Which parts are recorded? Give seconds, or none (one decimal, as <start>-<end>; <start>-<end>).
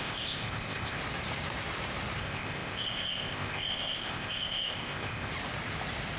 1.0-2.2; 5.3-6.2